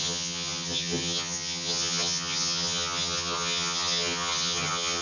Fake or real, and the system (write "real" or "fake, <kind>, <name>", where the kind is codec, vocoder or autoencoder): fake, vocoder, HiFi-GAN